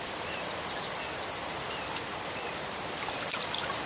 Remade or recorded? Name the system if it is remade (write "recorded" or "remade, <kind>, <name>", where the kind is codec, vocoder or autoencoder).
remade, vocoder, BigVGAN v2